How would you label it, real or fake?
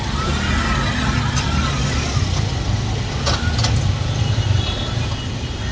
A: real